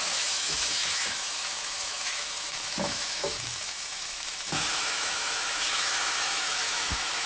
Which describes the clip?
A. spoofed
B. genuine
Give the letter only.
A